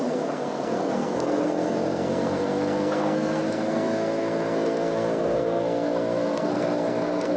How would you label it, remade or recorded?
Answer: remade